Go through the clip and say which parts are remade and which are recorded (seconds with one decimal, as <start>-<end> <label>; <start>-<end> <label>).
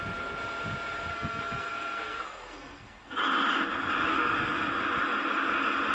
0.0-1.1 recorded; 1.1-3.2 remade; 3.2-4.1 recorded; 4.1-4.6 remade; 4.6-5.9 recorded